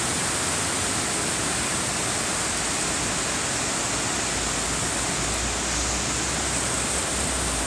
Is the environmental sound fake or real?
real